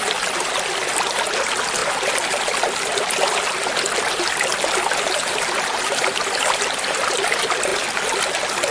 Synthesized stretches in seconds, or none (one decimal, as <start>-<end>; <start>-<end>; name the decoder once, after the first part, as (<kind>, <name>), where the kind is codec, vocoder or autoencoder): none

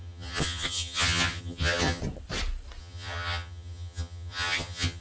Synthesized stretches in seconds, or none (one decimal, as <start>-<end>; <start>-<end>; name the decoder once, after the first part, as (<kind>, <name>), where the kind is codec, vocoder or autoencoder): 0.0-2.0 (vocoder, HiFi-GAN); 2.8-5.0

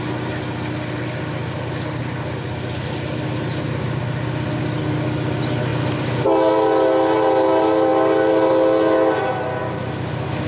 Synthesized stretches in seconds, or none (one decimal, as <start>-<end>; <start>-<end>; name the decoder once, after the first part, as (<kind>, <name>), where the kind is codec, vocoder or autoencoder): none

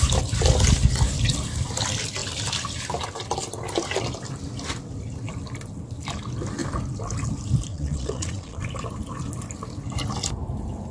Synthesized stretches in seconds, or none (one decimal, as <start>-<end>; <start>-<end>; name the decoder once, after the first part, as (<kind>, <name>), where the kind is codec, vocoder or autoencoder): 7.7-8.6 (vocoder, Vocos)